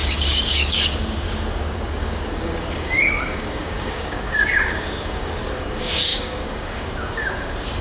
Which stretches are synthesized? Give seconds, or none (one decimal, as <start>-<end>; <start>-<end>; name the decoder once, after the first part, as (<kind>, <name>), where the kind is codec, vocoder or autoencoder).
0.0-7.8 (codec, DAC)

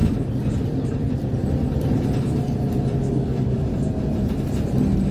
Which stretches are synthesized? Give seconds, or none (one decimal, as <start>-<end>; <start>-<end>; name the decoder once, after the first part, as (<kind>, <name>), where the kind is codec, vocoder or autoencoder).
3.1-3.7 (codec, DAC)

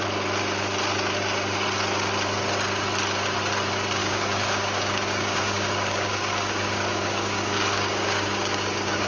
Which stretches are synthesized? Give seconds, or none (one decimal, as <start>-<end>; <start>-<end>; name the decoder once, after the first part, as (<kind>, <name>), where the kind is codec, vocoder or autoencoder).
4.0-9.1 (codec, DAC)

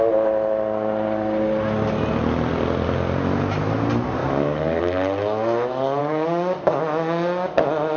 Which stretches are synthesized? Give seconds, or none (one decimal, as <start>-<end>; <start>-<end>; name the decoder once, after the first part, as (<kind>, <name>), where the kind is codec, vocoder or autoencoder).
4.2-4.8 (codec, DAC); 6.0-6.8

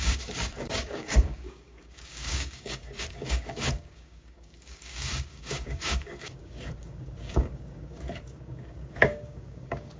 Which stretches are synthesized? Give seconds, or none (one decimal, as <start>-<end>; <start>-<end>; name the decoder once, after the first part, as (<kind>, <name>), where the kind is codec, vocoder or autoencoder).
0.0-10.0 (codec, DAC)